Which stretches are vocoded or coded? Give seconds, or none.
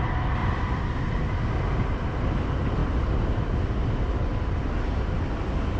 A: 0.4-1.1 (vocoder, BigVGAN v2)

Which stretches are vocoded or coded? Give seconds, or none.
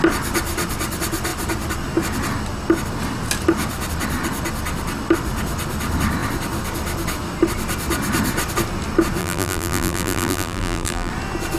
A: 9.2-11.1 (vocoder, BigVGAN v2)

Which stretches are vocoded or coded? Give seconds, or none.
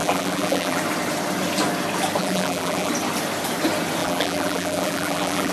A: 0.0-0.8 (vocoder, BigVGAN v2); 2.2-2.9; 4.0-5.5